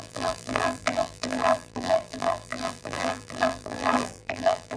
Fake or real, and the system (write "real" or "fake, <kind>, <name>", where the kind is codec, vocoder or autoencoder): fake, vocoder, BigVGAN v2